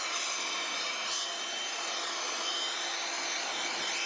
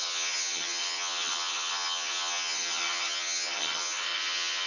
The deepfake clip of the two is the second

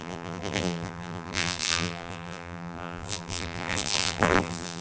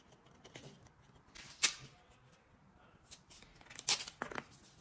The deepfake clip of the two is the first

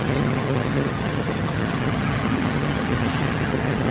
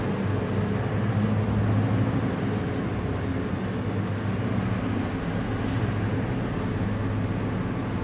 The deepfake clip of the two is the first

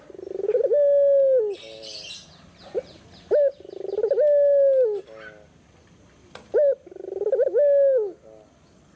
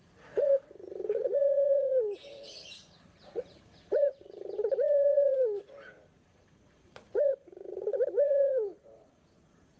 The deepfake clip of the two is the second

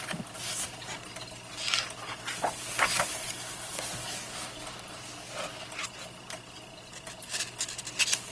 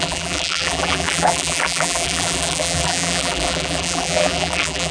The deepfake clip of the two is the second